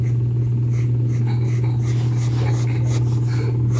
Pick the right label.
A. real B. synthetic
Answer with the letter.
A